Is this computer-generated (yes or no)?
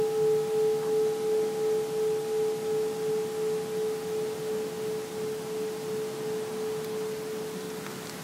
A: no